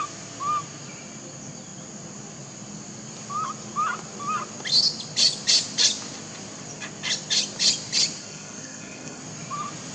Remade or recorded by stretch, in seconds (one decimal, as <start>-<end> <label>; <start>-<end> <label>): 0.0-8.2 recorded; 8.2-9.2 remade; 9.2-9.9 recorded